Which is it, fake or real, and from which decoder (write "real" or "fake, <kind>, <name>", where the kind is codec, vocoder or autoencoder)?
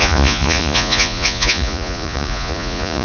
fake, vocoder, Vocos